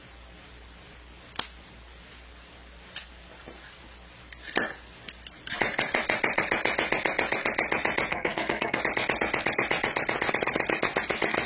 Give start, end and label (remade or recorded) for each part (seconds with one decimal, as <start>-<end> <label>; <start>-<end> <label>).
0.0-8.1 recorded; 8.1-8.8 remade; 8.8-11.5 recorded